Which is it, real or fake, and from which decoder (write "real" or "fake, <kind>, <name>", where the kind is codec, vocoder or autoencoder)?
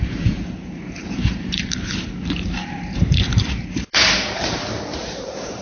fake, vocoder, BigVGAN v2